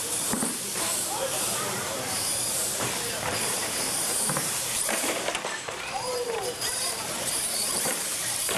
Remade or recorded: remade